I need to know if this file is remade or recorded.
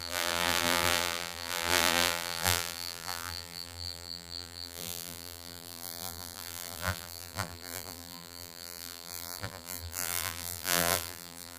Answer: remade